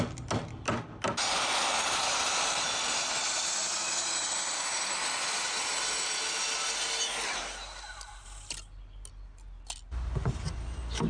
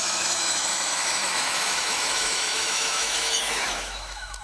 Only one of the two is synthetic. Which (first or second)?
second